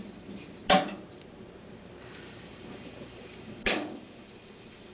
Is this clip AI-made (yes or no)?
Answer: yes